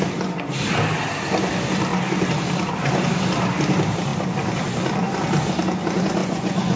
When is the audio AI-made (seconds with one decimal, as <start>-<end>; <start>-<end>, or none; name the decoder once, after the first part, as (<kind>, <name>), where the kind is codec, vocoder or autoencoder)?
6.2-6.8 (vocoder, Vocos)